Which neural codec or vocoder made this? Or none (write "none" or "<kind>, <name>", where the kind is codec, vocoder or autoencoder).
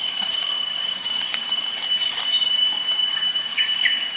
codec, DAC